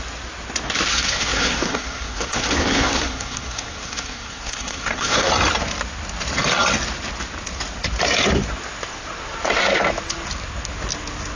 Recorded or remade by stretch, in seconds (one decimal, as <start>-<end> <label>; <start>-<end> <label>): 0.0-0.9 recorded; 0.9-5.3 remade; 5.3-11.4 recorded